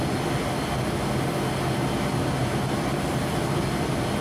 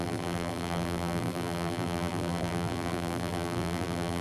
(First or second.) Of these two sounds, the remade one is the second